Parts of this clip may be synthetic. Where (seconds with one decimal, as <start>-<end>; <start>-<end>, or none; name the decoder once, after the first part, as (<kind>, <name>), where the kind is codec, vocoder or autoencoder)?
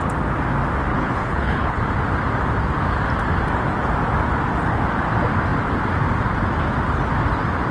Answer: 0.9-1.8 (codec, HILCodec)